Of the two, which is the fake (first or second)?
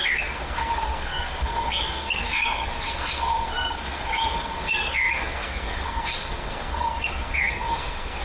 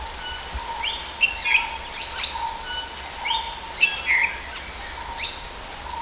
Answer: first